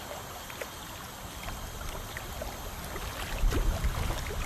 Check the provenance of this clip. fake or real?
real